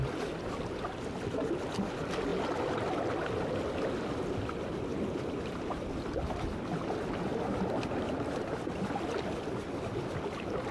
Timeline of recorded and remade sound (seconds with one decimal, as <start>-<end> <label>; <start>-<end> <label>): 0.0-4.9 recorded; 4.9-5.9 remade; 5.9-10.7 recorded